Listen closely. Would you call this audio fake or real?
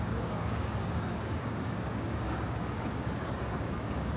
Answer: fake